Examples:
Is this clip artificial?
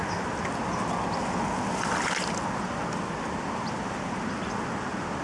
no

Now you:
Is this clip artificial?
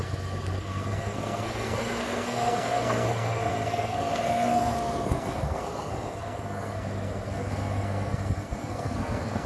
yes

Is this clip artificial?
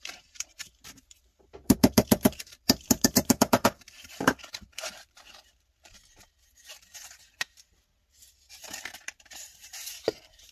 yes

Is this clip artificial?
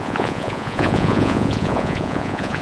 yes